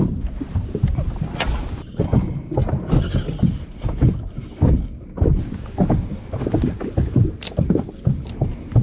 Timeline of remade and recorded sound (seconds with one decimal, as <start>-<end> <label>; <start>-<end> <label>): 0.0-8.8 recorded